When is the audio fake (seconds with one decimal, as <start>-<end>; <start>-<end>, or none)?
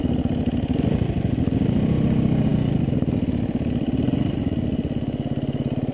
none